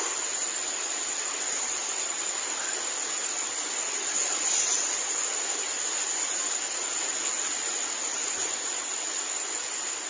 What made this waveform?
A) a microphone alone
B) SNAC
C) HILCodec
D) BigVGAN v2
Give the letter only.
A